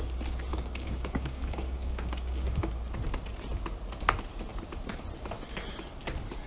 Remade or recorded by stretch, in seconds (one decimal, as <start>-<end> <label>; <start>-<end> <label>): 0.0-0.5 recorded; 0.5-2.7 remade; 2.7-6.5 recorded